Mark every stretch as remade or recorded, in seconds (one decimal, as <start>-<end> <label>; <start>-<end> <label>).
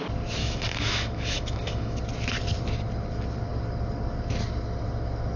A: 0.0-0.4 recorded; 0.4-2.0 remade; 2.0-5.4 recorded